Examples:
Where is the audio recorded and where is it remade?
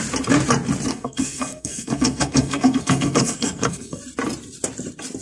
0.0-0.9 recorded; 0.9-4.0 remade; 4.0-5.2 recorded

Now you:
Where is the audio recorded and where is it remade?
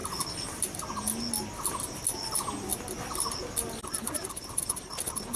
0.0-5.4 recorded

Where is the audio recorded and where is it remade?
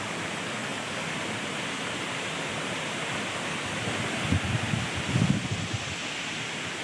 0.0-6.8 recorded